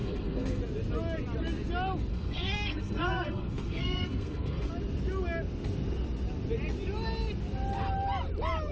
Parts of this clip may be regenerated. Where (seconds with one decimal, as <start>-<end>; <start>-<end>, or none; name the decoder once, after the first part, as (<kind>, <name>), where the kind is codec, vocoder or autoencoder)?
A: 0.0-0.6 (codec, SNAC); 2.1-4.7